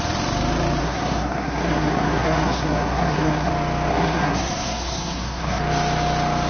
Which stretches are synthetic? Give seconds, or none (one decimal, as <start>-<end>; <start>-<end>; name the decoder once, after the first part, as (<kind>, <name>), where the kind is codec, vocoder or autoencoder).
0.8-3.5 (codec, SNAC); 3.9-5.6